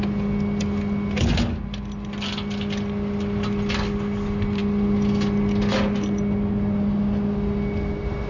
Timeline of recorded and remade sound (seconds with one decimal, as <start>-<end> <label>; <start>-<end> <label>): 0.0-8.3 recorded

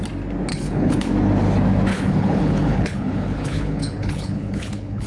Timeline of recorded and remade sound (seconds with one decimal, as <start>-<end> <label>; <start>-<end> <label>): 0.0-0.5 recorded; 0.5-1.1 remade; 1.1-1.9 recorded; 1.9-5.1 remade